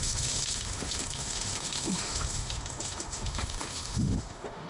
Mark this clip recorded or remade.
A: remade